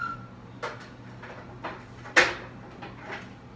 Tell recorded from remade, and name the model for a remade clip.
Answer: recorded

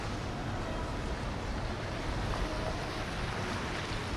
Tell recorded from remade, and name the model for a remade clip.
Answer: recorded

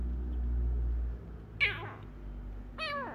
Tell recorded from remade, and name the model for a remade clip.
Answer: recorded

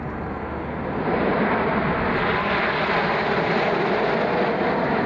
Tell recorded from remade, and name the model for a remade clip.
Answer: recorded